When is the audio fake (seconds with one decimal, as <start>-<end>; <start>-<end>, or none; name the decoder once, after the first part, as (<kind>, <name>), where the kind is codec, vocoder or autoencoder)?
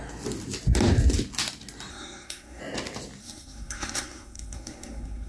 1.9-2.6 (codec, SNAC); 3.2-5.3